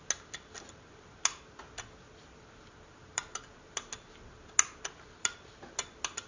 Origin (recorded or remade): recorded